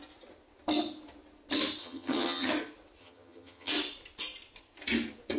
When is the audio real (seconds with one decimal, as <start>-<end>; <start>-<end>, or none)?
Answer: 0.0-1.8; 2.5-3.0; 3.7-5.4